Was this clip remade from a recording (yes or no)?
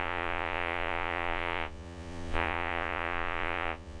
yes